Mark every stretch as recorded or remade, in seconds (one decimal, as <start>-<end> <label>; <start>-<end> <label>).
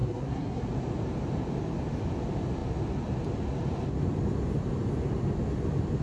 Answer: 0.0-0.6 remade; 0.6-6.0 recorded